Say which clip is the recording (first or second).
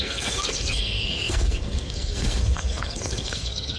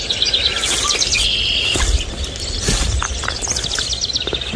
second